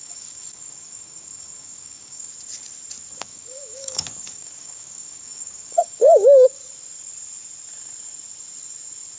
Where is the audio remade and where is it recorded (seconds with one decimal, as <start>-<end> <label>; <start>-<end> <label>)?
0.0-2.3 remade; 2.3-3.1 recorded; 3.1-6.6 remade; 6.6-9.2 recorded